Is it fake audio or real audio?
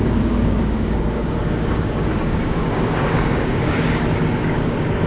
fake